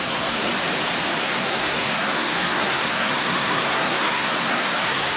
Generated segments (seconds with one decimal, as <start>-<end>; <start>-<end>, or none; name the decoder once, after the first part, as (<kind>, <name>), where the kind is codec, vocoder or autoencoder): 0.0-0.5 (codec, SNAC); 1.2-5.2